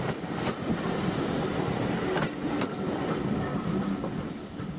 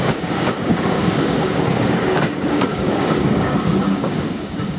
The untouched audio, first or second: first